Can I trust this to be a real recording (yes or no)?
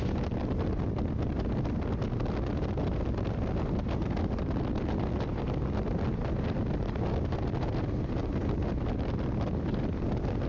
yes